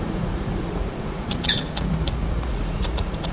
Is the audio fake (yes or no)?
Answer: yes